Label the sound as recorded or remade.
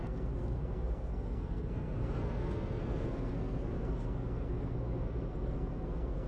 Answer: remade